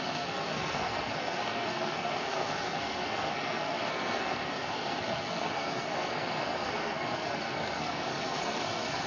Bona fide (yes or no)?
no